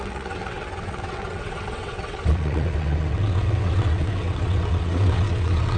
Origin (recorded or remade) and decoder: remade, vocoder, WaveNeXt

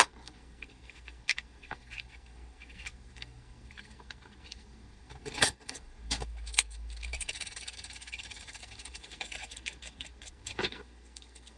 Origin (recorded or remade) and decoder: remade, codec, SNAC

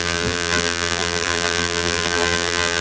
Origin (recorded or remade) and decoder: remade, vocoder, BigVGAN v2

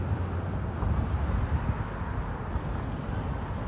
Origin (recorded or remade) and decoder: recorded